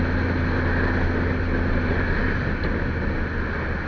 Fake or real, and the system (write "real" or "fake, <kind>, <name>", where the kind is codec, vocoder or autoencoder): real